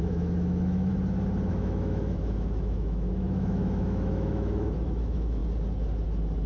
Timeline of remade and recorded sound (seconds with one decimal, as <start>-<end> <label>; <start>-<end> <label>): 0.0-0.9 remade; 0.9-1.5 recorded; 1.5-5.4 remade; 5.4-6.5 recorded